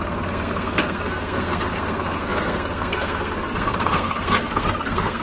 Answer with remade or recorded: remade